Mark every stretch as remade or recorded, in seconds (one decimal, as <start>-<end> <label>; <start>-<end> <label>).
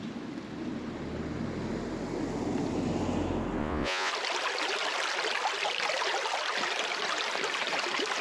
0.0-3.6 recorded; 3.6-4.1 remade; 4.1-8.2 recorded